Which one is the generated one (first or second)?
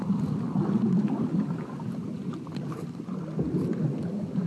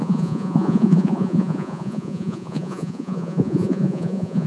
second